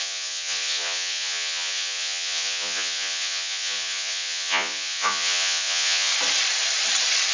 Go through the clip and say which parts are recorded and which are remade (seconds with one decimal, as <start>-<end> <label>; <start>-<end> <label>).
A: 0.0-6.1 remade; 6.1-7.3 recorded